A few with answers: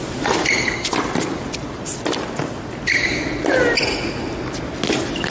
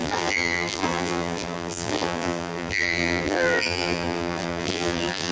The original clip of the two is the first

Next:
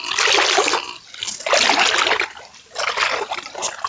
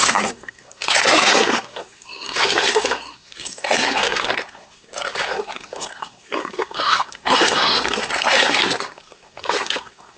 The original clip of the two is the first